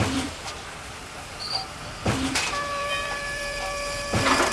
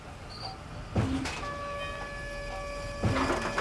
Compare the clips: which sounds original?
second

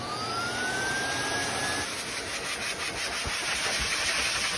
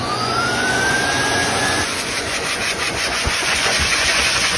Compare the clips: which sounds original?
first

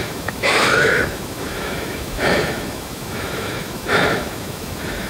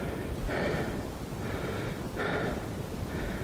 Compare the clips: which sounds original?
second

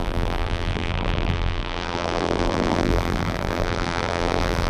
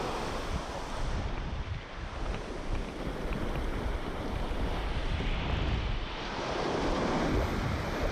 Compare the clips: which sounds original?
second